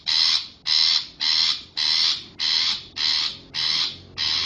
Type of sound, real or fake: real